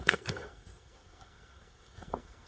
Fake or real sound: fake